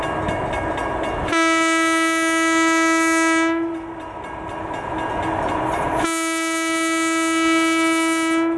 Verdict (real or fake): real